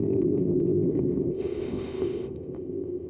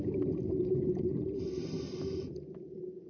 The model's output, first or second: first